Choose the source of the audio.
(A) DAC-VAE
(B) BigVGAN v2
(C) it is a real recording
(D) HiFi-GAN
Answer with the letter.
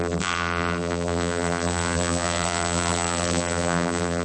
B